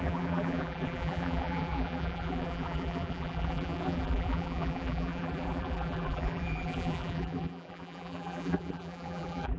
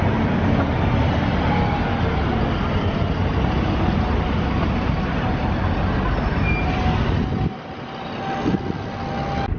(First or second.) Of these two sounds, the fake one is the first